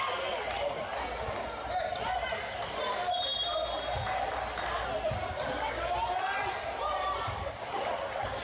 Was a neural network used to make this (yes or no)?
no